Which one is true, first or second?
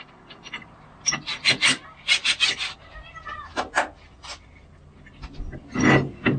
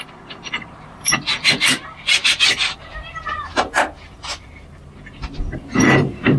first